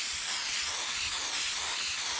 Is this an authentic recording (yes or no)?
yes